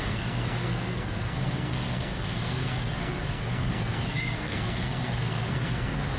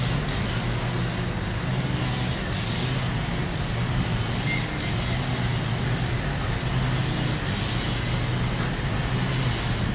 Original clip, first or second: second